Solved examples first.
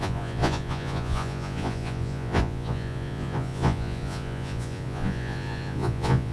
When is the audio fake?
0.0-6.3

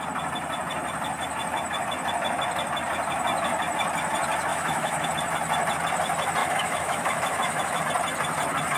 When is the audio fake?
4.5-5.1; 6.4-7.8

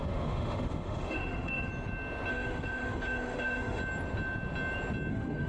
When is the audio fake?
0.0-1.7; 2.3-3.8; 5.1-5.5